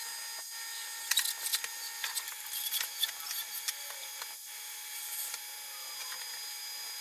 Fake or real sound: real